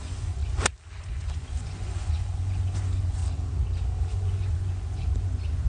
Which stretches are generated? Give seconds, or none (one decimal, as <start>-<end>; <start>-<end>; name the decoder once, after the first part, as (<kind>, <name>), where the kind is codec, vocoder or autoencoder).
0.0-0.4 (vocoder, Vocos); 1.0-3.2; 4.1-5.7